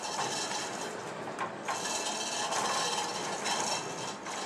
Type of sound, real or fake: real